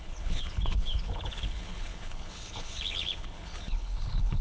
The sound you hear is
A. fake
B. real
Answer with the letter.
A